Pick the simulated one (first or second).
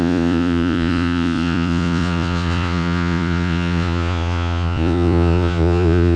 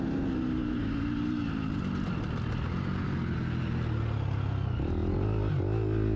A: first